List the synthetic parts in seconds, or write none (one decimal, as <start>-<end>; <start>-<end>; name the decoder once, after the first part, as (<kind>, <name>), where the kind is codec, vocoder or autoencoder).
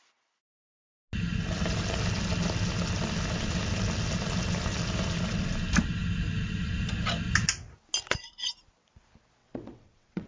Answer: 9.4-10.3 (vocoder, WaveNeXt)